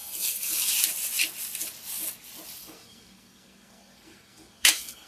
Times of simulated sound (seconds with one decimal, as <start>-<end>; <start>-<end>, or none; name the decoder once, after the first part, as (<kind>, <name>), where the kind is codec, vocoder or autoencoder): 0.0-0.7 (codec, SNAC); 2.6-5.1